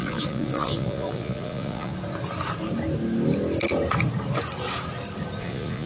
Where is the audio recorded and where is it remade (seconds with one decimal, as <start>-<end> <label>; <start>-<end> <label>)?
0.0-1.9 remade; 1.9-5.4 recorded; 5.4-5.9 remade